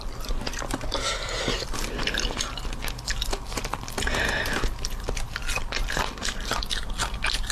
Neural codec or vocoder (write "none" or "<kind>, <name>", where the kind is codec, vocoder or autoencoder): none